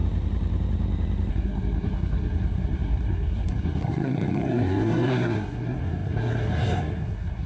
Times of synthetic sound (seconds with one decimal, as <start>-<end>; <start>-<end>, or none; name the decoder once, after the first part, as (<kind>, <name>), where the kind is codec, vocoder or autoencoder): 1.3-7.5 (codec, SNAC)